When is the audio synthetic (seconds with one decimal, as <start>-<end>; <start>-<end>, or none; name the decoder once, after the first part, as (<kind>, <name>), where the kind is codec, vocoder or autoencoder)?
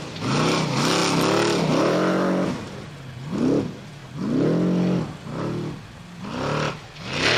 none